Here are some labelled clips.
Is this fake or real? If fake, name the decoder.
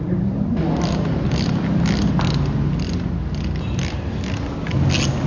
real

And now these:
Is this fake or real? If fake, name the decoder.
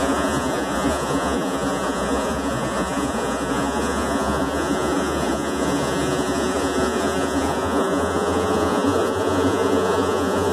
fake, vocoder, Vocos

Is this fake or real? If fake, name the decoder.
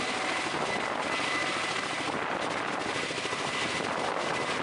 real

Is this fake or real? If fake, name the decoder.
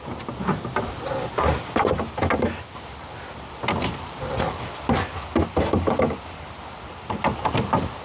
real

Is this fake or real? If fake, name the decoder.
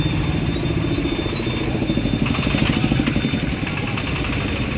real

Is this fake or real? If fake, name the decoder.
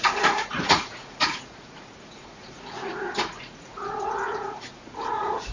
fake, vocoder, Vocos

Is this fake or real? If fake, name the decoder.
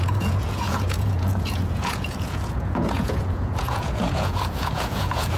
fake, vocoder, Vocos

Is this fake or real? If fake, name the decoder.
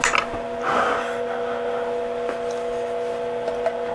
real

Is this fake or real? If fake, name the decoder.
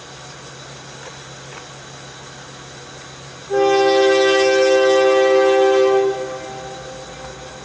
real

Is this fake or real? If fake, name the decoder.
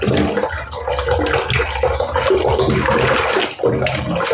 real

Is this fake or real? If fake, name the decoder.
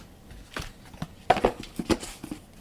real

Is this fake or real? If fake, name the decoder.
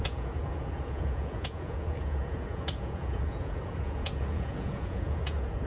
fake, vocoder, Vocos